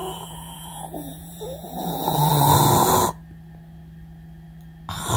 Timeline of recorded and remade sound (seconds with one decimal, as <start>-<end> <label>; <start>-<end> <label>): 0.0-2.3 remade; 2.3-5.2 recorded

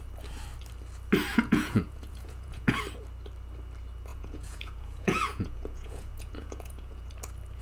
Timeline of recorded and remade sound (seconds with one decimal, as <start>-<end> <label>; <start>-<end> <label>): 0.0-1.3 recorded; 1.3-2.8 remade; 2.8-4.1 recorded; 4.1-7.1 remade; 7.1-7.6 recorded

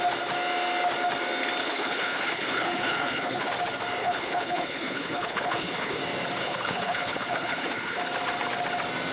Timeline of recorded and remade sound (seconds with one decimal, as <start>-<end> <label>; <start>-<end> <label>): 0.0-1.6 recorded; 1.6-3.5 remade; 3.5-4.0 recorded; 4.0-6.0 remade; 6.0-6.4 recorded; 6.4-8.0 remade; 8.0-9.1 recorded